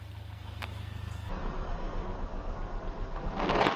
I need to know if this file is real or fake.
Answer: fake